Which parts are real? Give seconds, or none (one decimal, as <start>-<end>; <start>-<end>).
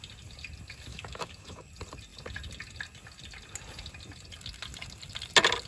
0.0-0.9; 1.7-5.7